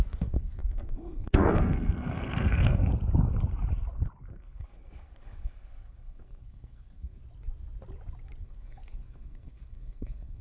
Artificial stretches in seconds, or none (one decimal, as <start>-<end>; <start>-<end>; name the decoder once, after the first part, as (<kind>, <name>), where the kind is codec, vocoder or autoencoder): 0.0-2.9 (codec, SNAC); 4.3-7.2; 8.4-10.4